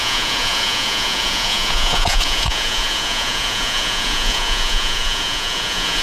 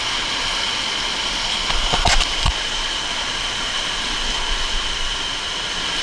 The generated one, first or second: first